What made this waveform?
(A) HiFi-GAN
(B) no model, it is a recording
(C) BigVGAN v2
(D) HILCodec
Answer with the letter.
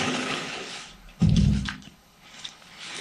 D